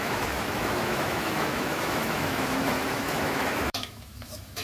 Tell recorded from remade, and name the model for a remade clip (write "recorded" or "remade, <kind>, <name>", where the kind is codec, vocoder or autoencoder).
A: remade, autoencoder, DAC-VAE